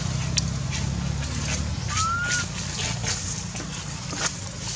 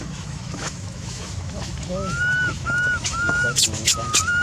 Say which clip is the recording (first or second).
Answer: first